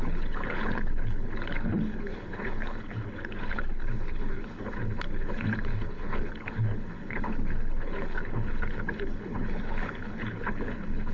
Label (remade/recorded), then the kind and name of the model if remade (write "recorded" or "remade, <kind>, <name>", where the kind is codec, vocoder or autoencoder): remade, codec, HILCodec